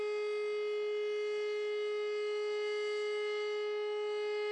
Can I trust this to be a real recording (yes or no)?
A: yes